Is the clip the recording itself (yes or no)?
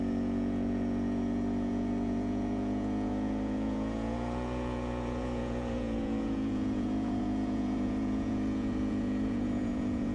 no